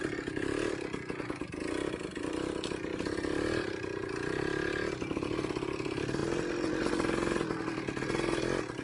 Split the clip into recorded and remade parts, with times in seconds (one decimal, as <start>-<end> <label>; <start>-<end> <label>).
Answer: 0.0-8.8 recorded